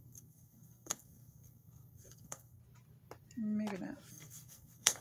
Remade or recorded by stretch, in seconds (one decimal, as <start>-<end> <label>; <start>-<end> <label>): 0.0-2.6 remade; 2.6-4.1 recorded; 4.1-5.0 remade